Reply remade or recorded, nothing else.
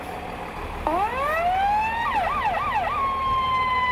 recorded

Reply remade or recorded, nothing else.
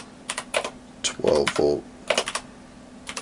recorded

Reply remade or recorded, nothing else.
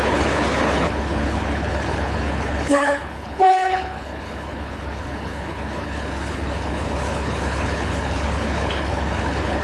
remade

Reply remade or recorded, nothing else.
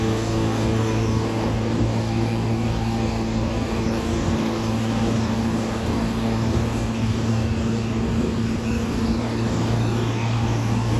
remade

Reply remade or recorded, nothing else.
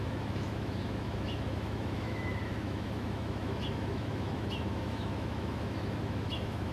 remade